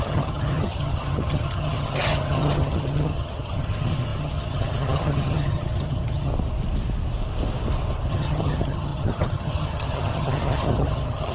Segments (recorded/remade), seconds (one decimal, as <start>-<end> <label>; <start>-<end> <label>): 0.0-6.3 remade; 6.3-8.1 recorded; 8.1-11.3 remade